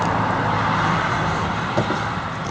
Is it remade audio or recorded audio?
remade